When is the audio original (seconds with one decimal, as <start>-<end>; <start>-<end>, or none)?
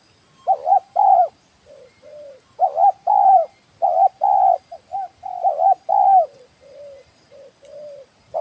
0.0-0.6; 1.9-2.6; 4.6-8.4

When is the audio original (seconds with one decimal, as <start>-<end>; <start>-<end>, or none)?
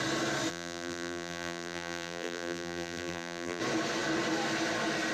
0.0-0.5; 3.6-5.1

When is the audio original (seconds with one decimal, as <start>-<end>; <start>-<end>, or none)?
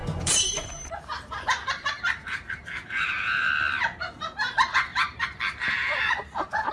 3.5-4.9